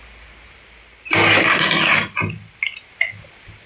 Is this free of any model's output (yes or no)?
yes